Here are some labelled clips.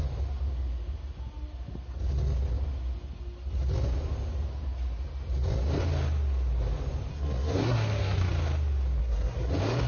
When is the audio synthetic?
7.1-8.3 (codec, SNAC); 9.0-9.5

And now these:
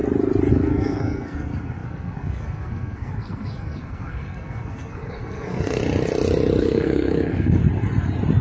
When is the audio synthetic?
0.5-5.8 (codec, SNAC); 6.6-7.6

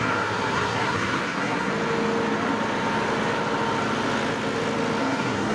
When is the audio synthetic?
0.0-1.7 (codec, SNAC); 5.0-5.5

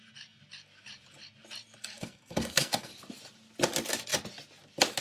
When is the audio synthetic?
1.8-2.9 (codec, SNAC)

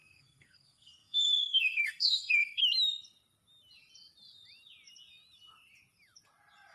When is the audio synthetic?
0.0-2.6 (codec, SNAC)

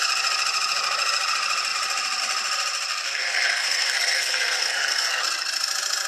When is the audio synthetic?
2.9-5.2 (codec, SNAC)

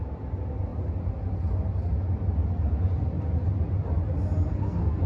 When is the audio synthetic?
4.5-5.1 (codec, SNAC)

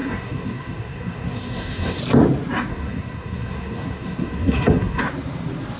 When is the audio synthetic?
0.0-2.0 (codec, SNAC); 2.7-5.0